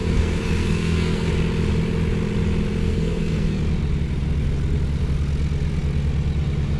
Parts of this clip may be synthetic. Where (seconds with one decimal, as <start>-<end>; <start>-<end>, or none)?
0.0-1.3; 2.8-3.6